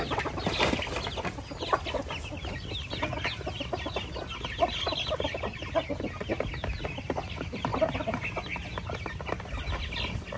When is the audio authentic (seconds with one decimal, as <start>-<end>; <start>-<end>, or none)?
0.0-10.4